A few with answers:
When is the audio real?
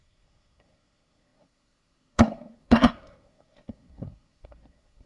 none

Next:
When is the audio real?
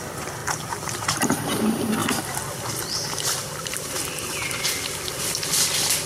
0.4-1.0; 2.0-6.1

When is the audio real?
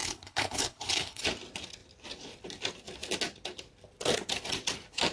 1.2-5.1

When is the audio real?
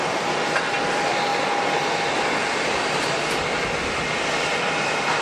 1.3-2.0; 3.5-4.1